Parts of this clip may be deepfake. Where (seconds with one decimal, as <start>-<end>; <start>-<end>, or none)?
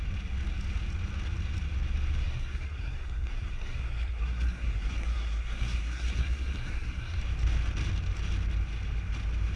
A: 2.2-7.2